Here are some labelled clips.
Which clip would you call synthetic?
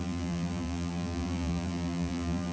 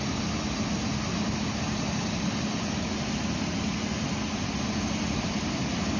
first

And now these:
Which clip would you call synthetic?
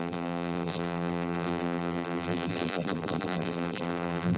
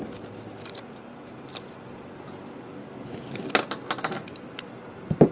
first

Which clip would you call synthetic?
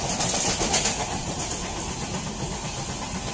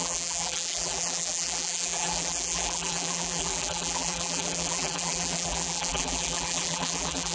second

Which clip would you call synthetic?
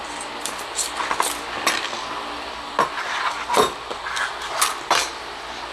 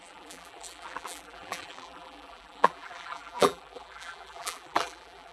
second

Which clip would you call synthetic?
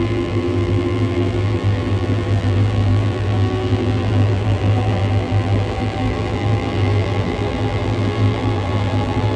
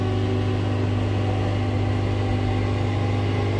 first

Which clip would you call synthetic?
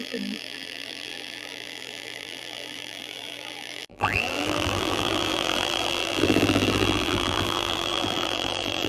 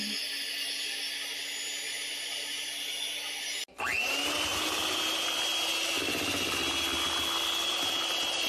first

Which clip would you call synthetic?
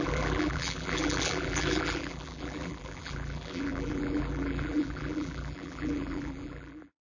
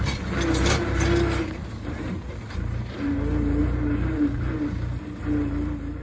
first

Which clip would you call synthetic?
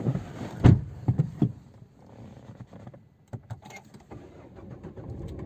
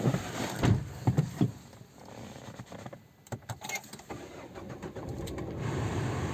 first